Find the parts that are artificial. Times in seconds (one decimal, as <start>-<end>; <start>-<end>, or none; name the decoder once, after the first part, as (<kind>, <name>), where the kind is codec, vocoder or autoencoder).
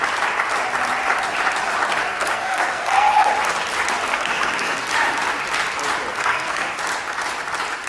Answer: 2.0-3.3 (codec, SNAC); 4.1-4.9; 6.1-6.8